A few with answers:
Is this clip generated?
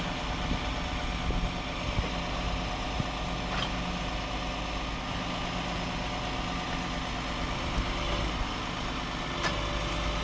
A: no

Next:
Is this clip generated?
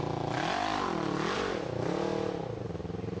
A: no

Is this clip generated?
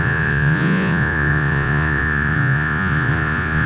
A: yes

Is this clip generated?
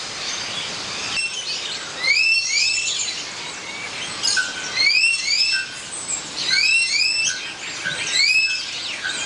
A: no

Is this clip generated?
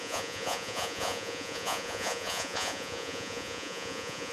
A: yes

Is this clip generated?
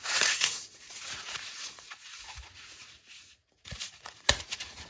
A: yes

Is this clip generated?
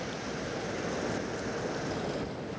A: no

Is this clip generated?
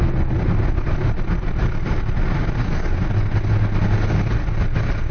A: no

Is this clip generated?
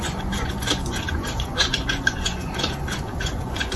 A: yes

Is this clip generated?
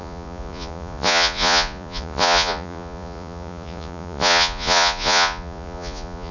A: yes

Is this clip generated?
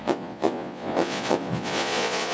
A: yes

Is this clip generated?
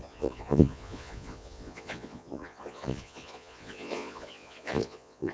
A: yes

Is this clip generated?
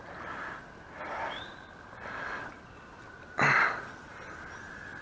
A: no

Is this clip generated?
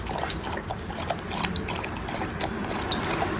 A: no